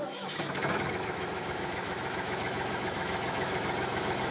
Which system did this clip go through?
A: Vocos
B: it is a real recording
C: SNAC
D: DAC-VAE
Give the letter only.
D